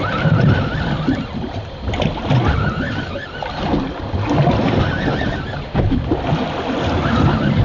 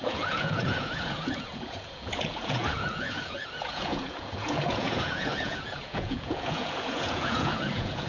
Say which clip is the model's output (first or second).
second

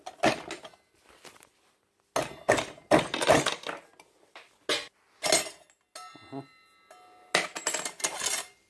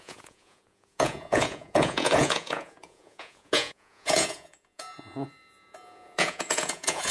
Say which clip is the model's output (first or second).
second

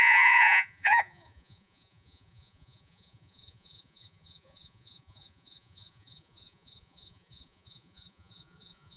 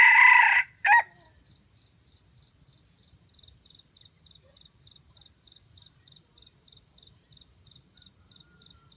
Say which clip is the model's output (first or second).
first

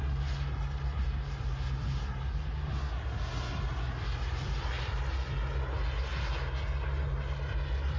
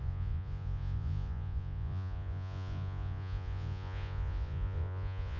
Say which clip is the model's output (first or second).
second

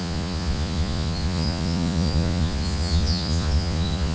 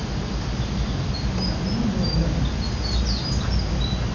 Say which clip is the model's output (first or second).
first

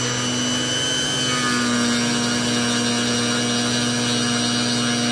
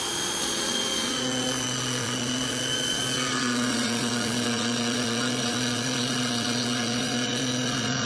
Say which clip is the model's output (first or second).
second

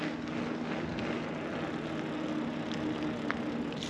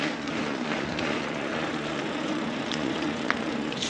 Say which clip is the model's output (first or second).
second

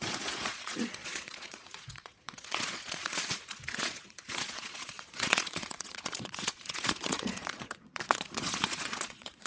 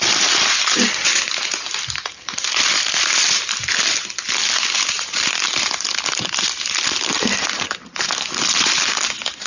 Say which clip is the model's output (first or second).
first